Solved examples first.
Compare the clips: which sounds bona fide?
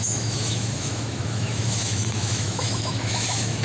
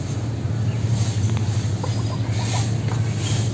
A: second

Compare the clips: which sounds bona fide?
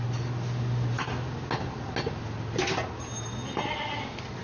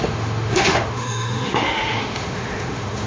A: first